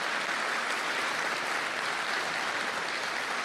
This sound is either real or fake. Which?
real